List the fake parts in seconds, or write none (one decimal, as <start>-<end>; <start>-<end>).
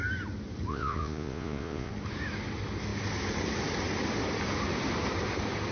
0.7-1.9